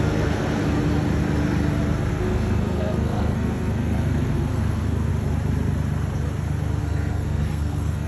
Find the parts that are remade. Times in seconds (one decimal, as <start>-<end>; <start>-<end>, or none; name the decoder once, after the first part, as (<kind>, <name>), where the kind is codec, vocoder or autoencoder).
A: 0.0-0.6 (codec, SNAC); 2.1-5.1; 6.8-8.1